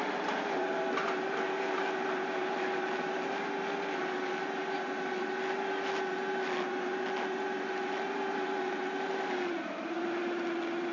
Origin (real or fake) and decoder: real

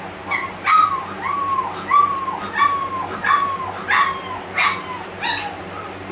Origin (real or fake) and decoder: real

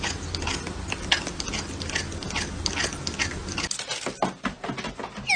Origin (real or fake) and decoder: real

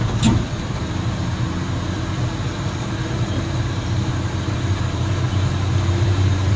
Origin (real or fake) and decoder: fake, vocoder, BigVGAN v2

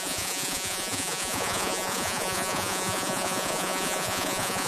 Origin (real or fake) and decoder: fake, vocoder, Vocos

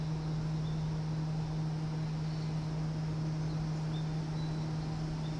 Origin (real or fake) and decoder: real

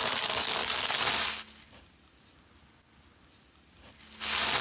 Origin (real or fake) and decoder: real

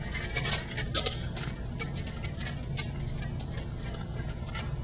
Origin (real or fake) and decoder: real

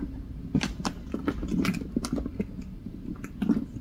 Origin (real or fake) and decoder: real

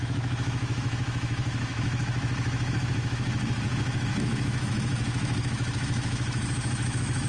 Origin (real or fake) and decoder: fake, autoencoder, DAC-VAE